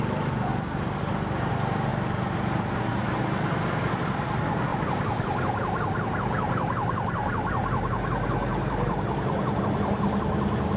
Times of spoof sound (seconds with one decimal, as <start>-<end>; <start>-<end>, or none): 0.5-1.1; 1.9-2.9; 4.7-9.6